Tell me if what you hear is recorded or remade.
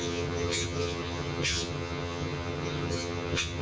remade